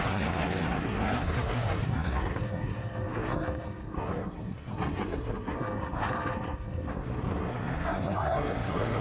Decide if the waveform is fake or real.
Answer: fake